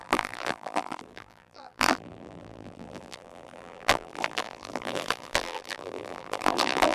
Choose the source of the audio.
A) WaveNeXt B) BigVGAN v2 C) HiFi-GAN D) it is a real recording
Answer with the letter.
B